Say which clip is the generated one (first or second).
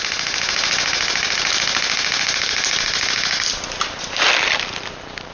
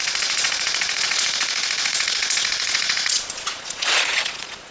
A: second